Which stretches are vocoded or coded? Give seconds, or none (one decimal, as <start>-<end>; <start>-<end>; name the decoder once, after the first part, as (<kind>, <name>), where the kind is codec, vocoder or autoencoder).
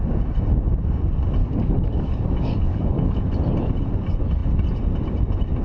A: 1.4-3.2 (codec, DAC)